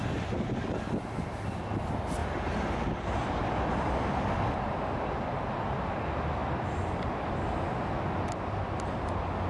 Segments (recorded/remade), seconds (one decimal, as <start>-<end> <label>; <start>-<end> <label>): 0.0-9.5 recorded